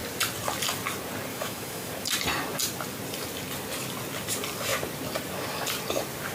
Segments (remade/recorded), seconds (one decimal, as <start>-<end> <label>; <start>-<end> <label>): 0.0-1.3 recorded; 1.3-1.9 remade; 1.9-6.3 recorded